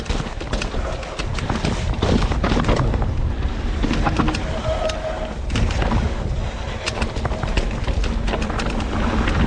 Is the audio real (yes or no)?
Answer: yes